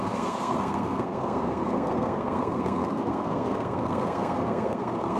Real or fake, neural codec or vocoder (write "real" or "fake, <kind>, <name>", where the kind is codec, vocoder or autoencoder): fake, codec, SNAC